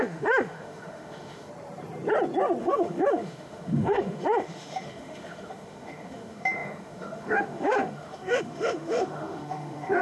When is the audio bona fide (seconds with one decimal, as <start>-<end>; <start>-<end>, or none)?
1.5-2.6